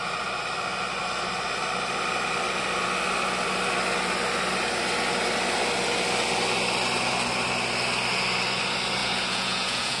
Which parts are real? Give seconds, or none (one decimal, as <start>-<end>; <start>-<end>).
0.0-9.0